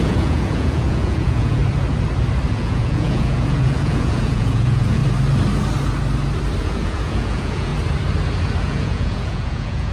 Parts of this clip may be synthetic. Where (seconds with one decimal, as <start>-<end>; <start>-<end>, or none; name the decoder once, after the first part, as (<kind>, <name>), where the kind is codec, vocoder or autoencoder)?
0.0-1.6 (vocoder, Vocos); 2.5-5.0; 6.6-7.7; 8.6-9.9